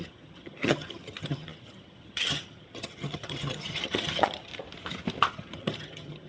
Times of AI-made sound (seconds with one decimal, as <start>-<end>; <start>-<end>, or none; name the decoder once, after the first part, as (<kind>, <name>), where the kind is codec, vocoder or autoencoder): 0.0-4.5 (vocoder, HiFi-GAN); 5.3-6.3